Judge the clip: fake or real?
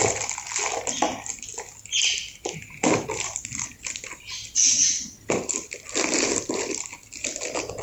real